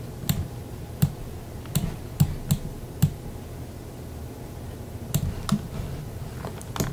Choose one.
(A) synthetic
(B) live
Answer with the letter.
B